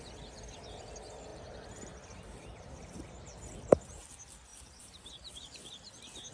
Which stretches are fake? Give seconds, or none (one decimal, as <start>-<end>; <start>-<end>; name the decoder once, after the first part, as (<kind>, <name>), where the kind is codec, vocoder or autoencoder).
1.3-3.2 (vocoder, BigVGAN v2); 4.5-5.5